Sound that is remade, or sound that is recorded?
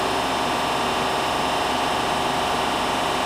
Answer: recorded